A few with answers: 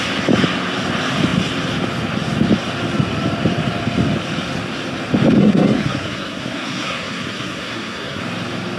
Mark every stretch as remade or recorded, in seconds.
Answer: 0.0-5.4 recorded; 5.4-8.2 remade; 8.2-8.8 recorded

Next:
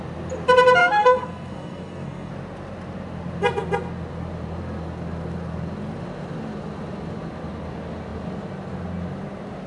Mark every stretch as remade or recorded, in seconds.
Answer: 0.0-0.8 recorded; 0.8-2.3 remade; 2.3-9.7 recorded

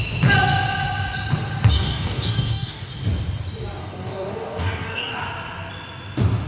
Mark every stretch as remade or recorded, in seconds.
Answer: 0.0-1.7 recorded; 1.7-2.9 remade; 2.9-3.8 recorded; 3.8-5.2 remade; 5.2-6.5 recorded

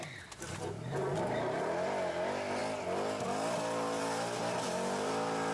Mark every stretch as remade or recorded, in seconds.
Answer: 0.0-5.5 recorded